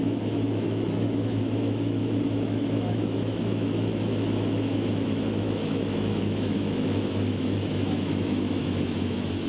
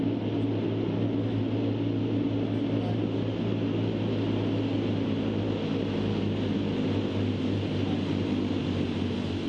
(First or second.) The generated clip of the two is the first